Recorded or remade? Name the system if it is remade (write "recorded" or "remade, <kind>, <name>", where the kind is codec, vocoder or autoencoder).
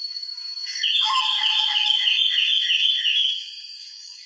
remade, autoencoder, DAC-VAE